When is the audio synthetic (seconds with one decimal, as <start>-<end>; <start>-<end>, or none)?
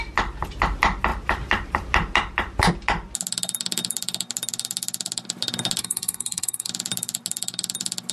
5.8-6.7